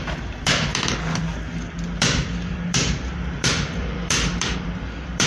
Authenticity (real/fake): fake